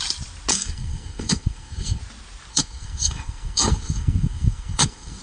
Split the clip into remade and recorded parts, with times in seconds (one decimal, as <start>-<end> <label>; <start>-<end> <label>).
0.0-0.5 recorded; 0.5-2.0 remade; 2.0-2.5 recorded; 2.5-5.2 remade